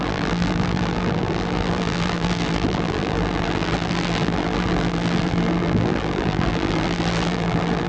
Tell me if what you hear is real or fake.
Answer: fake